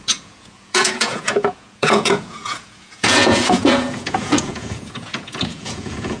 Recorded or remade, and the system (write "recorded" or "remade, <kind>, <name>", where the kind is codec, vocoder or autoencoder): remade, vocoder, Vocos